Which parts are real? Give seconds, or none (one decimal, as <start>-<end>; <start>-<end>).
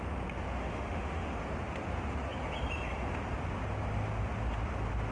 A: 0.0-0.6; 1.4-5.1